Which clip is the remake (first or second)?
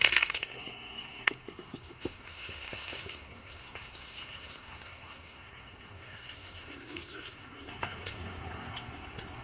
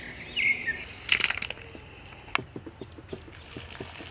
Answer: first